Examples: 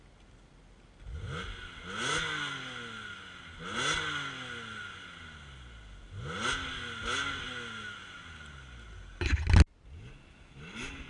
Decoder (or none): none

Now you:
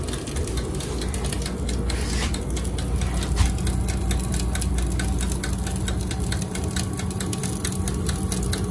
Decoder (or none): none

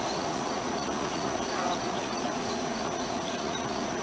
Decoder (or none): vocoder, Vocos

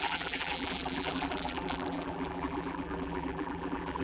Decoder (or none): vocoder, BigVGAN v2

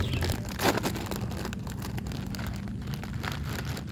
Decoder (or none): none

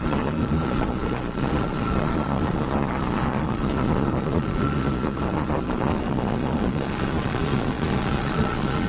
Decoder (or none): vocoder, Vocos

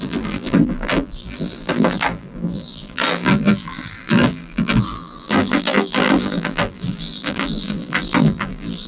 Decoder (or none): vocoder, BigVGAN v2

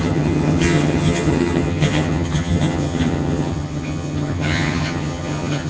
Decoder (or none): vocoder, HiFi-GAN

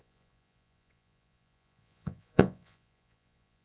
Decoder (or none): vocoder, Vocos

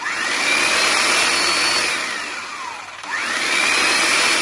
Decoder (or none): none